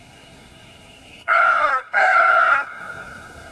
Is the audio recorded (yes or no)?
no